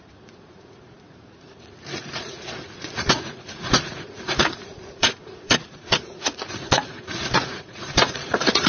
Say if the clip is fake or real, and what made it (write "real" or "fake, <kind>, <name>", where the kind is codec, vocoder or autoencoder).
fake, vocoder, Vocos